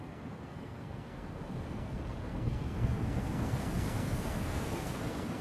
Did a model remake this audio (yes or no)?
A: yes